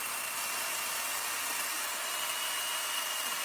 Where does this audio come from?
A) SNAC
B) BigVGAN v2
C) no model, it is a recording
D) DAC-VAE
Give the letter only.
C